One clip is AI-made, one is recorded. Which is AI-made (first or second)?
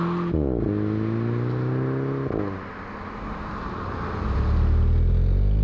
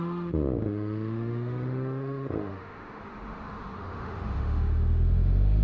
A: second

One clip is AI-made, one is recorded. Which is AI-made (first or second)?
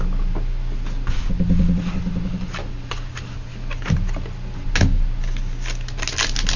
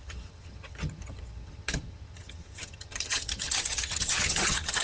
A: second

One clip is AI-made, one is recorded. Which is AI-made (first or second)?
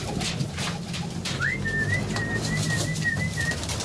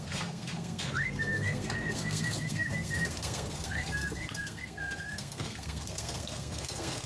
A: second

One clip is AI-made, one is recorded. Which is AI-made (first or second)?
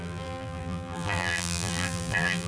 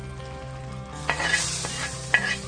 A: first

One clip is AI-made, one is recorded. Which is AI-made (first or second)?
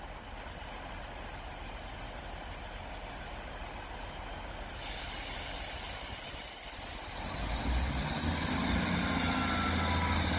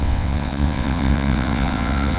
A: second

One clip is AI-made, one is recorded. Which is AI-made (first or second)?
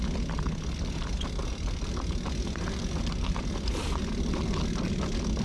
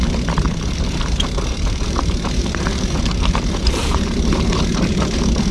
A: second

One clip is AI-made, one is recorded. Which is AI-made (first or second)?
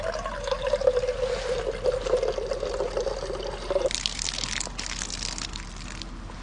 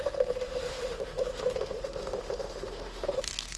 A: second